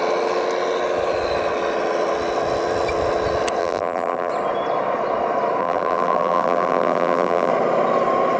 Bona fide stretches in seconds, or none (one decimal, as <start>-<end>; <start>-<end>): 0.0-3.6; 4.3-5.6; 7.5-8.4